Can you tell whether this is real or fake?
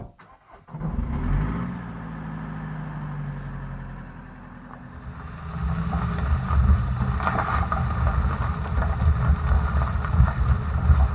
real